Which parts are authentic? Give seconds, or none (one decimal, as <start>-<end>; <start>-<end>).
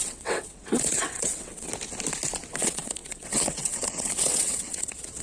1.7-2.5